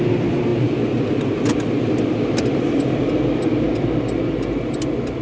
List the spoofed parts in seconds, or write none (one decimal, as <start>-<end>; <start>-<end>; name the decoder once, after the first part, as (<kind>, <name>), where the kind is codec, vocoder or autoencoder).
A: none